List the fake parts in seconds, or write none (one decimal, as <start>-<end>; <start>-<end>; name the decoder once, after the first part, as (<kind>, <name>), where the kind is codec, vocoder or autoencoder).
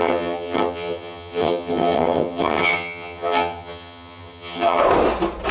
0.0-4.8 (vocoder, HiFi-GAN)